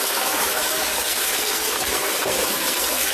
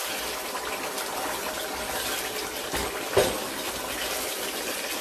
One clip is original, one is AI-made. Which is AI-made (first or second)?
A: first